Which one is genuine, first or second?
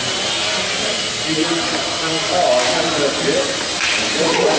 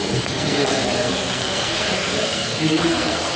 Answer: first